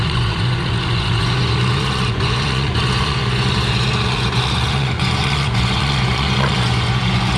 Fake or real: fake